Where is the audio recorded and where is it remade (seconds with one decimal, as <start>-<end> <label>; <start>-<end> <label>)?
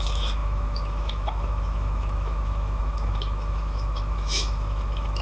0.0-5.2 remade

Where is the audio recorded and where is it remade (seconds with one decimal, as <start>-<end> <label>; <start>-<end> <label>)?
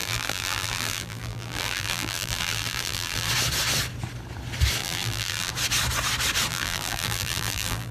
0.0-3.3 remade; 3.3-4.8 recorded; 4.8-5.5 remade; 5.5-6.5 recorded; 6.5-7.9 remade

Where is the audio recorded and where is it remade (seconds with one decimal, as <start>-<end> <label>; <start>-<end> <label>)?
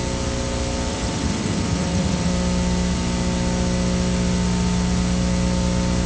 0.0-0.9 recorded; 0.9-2.3 remade; 2.3-6.1 recorded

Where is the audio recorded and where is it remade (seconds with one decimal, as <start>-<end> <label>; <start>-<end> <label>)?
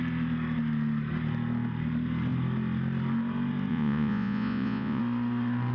0.0-3.7 recorded; 3.7-5.0 remade; 5.0-5.7 recorded